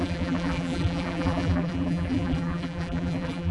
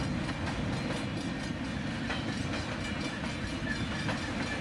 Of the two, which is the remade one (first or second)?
first